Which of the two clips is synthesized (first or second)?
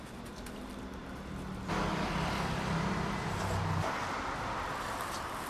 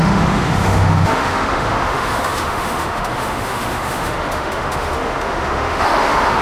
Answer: second